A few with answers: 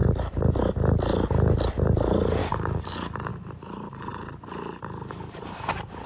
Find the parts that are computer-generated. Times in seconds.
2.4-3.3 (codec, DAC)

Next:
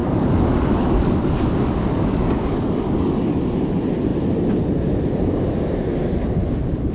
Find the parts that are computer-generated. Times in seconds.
0.0-3.4 (codec, DAC)

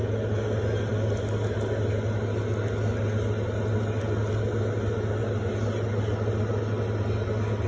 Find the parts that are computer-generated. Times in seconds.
none

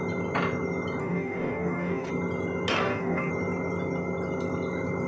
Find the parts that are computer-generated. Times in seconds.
1.0-2.1 (codec, DAC); 2.7-3.3

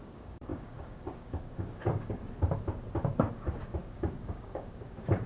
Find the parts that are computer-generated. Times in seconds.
0.0-2.2 (codec, DAC); 3.3-5.3